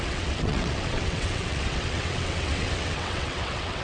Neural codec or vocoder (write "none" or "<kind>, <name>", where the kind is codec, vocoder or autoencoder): vocoder, WaveNeXt